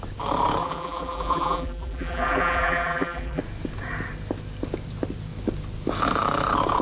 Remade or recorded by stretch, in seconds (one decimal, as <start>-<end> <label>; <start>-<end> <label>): 0.0-0.6 recorded; 0.6-3.4 remade; 3.4-6.8 recorded